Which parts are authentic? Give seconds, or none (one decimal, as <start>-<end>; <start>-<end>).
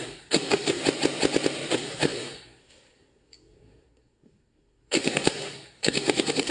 0.8-1.7